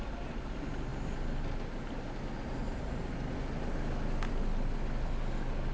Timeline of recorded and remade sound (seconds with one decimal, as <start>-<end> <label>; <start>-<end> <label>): 0.0-5.7 recorded